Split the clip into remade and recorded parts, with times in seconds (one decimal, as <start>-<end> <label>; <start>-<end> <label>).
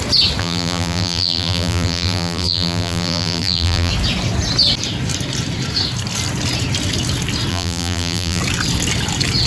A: 0.0-0.4 recorded; 0.4-3.9 remade; 3.9-7.5 recorded; 7.5-8.4 remade; 8.4-9.5 recorded